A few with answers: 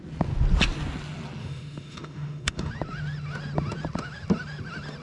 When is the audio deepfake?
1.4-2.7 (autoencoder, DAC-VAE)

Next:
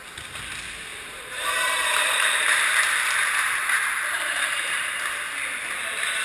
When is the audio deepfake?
0.9-4.6 (vocoder, BigVGAN v2)

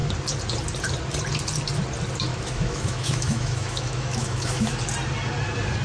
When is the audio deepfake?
2.3-4.8 (autoencoder, DAC-VAE)

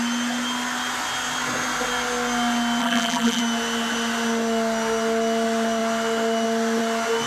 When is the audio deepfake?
2.8-3.4 (vocoder, BigVGAN v2)

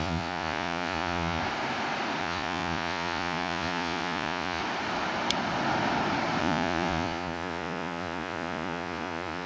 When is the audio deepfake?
0.0-1.4 (vocoder, Vocos); 2.2-4.6; 6.4-9.5